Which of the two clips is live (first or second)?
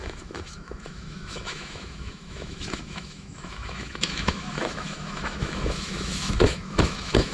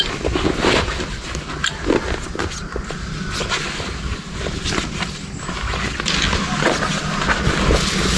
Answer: second